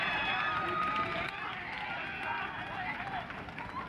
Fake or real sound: real